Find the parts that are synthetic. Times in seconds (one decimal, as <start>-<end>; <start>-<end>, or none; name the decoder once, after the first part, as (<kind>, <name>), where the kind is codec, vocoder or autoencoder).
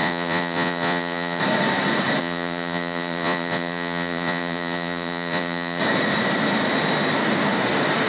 0.0-1.4 (vocoder, Vocos); 2.2-5.8